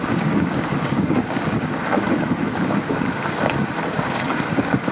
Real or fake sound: fake